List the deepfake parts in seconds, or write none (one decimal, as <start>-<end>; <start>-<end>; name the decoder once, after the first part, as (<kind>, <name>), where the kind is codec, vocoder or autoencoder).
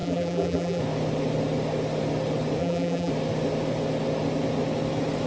0.0-0.8 (vocoder, BigVGAN v2); 2.6-3.1